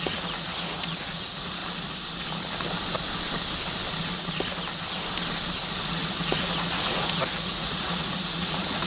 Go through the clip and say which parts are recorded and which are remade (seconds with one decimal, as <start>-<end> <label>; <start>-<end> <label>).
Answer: 0.0-1.6 remade; 1.6-5.8 recorded; 5.8-8.9 remade

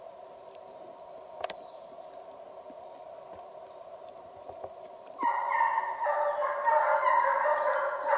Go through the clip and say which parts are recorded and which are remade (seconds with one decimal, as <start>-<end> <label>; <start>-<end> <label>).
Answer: 0.0-8.2 recorded

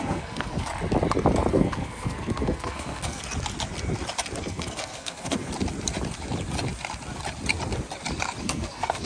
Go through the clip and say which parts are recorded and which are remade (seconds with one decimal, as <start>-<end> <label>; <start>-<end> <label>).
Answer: 0.0-0.7 remade; 0.7-1.5 recorded; 1.5-3.2 remade; 3.2-4.4 recorded; 4.4-5.5 remade; 5.5-8.4 recorded; 8.4-9.1 remade

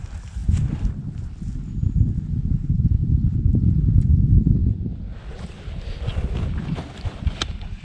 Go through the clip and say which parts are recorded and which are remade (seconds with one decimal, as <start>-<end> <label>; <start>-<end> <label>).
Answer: 0.0-7.8 recorded

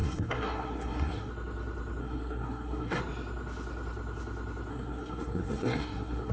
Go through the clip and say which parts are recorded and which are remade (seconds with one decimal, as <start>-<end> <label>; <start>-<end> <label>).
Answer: 0.0-1.3 remade; 1.3-2.0 recorded; 2.0-3.0 remade; 3.0-4.7 recorded; 4.7-6.3 remade

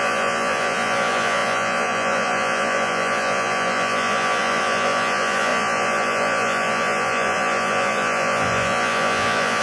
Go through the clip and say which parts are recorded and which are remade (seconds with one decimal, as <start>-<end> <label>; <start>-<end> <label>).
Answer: 0.0-9.6 remade

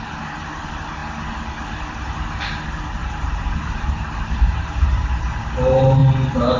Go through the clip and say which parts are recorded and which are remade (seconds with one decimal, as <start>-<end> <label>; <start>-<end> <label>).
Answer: 0.0-3.0 recorded; 3.0-5.0 remade; 5.0-6.6 recorded

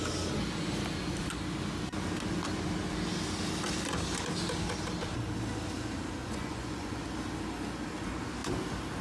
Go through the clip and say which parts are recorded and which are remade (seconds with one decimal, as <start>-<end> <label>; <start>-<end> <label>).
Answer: 0.0-6.2 recorded; 6.2-7.0 remade; 7.0-9.0 recorded